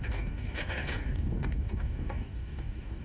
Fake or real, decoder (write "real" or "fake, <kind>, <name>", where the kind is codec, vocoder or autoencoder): fake, codec, DAC